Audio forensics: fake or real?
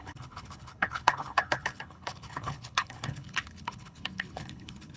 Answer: fake